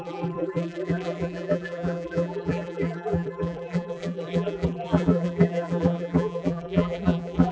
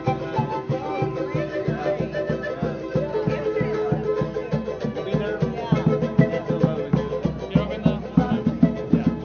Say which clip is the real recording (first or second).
second